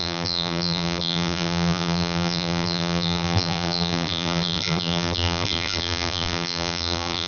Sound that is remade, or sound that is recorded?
remade